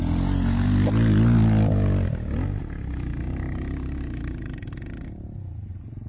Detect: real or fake real